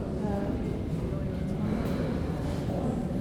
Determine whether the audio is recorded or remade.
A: recorded